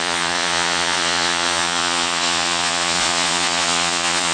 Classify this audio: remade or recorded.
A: remade